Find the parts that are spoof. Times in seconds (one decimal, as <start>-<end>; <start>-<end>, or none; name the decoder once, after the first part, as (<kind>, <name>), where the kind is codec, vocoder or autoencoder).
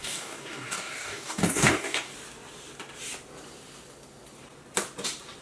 0.0-2.1 (codec, DAC)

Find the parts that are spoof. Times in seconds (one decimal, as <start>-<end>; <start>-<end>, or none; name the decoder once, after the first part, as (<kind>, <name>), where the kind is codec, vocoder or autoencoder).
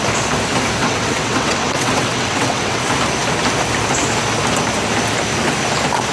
0.8-2.8 (vocoder, WaveNeXt)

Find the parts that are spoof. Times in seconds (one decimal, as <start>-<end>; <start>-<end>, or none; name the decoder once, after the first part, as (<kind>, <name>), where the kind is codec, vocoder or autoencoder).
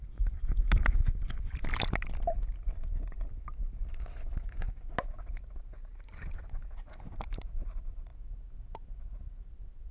8.1-9.5 (vocoder, Vocos)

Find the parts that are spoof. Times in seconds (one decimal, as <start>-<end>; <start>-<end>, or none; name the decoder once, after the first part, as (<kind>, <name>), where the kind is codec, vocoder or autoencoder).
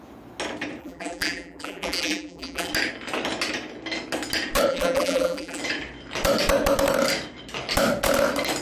0.8-2.7 (vocoder, BigVGAN v2); 4.7-5.6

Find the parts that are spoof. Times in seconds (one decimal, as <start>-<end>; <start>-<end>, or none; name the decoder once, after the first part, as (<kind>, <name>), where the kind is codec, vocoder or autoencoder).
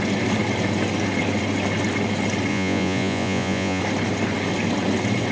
2.5-3.8 (vocoder, Vocos)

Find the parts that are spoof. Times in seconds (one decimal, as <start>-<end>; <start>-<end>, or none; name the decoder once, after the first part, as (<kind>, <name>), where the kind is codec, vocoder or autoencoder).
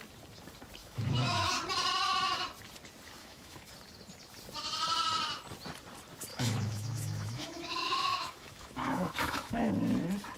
0.8-1.5 (autoencoder, DAC-VAE); 3.2-3.7; 6.3-9.7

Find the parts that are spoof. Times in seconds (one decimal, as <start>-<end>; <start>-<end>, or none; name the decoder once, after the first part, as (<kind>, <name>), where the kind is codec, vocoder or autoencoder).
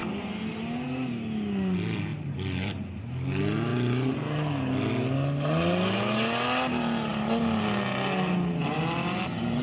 none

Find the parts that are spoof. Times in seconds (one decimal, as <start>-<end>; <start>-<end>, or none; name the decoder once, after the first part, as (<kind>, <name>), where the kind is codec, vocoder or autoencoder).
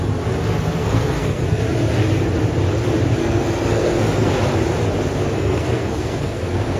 0.8-1.6 (codec, SNAC); 3.2-4.3; 5.2-6.8